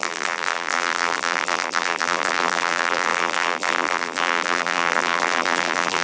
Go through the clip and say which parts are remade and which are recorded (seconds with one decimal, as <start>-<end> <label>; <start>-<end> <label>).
0.0-6.0 remade